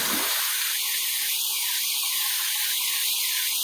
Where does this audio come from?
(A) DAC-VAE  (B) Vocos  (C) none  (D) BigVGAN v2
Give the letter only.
D